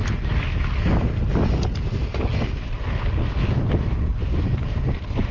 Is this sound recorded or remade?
recorded